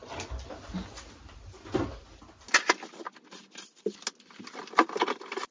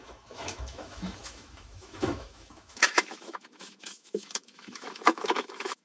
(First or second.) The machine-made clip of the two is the second